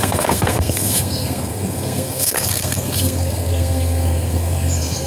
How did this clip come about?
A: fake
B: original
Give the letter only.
A